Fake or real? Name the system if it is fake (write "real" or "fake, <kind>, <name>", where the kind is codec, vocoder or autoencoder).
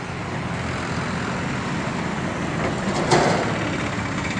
real